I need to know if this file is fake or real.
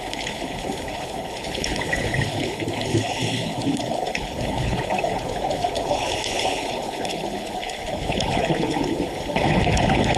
fake